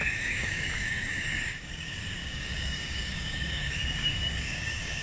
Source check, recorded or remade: remade